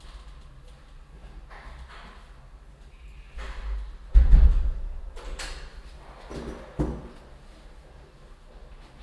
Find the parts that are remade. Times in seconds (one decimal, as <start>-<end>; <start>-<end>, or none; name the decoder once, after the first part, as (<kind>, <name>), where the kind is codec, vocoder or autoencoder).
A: none